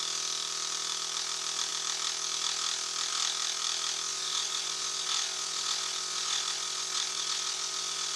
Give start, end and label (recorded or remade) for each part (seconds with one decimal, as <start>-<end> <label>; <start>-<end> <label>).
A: 0.0-4.1 recorded; 4.1-8.2 remade